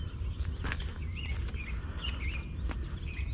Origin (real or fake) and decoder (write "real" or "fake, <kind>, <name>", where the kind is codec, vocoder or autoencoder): real